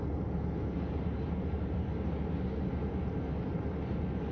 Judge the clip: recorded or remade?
recorded